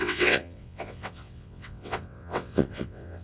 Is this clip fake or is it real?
fake